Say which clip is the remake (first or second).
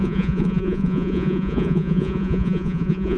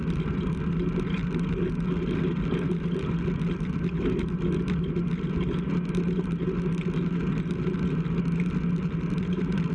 first